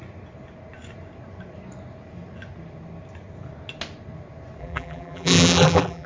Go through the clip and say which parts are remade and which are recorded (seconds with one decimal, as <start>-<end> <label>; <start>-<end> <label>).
0.0-4.6 recorded; 4.6-6.1 remade

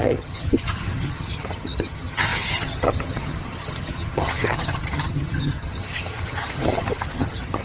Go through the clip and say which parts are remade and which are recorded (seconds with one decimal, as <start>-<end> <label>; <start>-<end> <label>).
0.0-7.6 remade

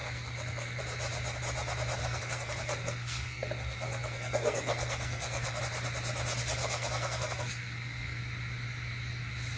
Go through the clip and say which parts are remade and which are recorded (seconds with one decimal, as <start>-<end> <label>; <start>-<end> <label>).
0.0-0.8 remade; 0.8-2.0 recorded; 2.0-5.6 remade; 5.6-6.6 recorded; 6.6-8.2 remade; 8.2-9.6 recorded

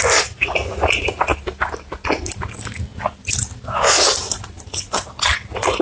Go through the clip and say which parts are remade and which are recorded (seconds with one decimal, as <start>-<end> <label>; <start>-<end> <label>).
0.0-0.4 recorded; 0.4-1.1 remade; 1.1-5.8 recorded

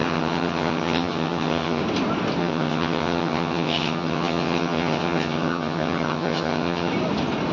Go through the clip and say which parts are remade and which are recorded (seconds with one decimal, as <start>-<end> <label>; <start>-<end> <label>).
0.0-1.8 remade; 1.8-2.4 recorded; 2.4-6.9 remade; 6.9-7.5 recorded

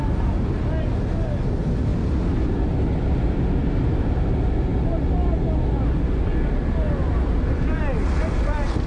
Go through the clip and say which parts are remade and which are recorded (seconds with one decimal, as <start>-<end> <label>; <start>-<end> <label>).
0.0-8.9 recorded